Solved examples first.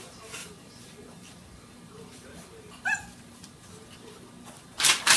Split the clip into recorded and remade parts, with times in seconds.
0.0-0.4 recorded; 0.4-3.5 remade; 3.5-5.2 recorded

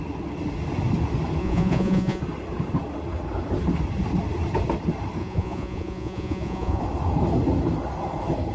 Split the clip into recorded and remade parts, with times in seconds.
0.0-1.4 recorded; 1.4-2.2 remade; 2.2-5.2 recorded; 5.2-6.8 remade; 6.8-8.5 recorded

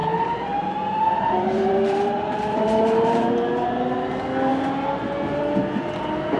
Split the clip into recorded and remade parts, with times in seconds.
0.0-3.8 remade; 3.8-6.4 recorded

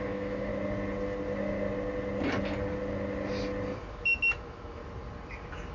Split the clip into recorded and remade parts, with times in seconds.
0.0-0.5 remade; 0.5-3.9 recorded; 3.9-4.8 remade; 4.8-5.7 recorded